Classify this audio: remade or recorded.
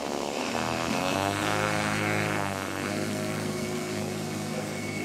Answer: remade